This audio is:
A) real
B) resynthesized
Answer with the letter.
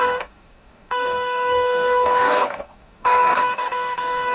B